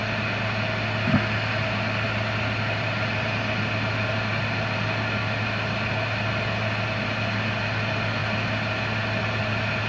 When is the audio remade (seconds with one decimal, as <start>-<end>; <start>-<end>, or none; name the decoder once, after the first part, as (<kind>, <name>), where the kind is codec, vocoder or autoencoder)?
none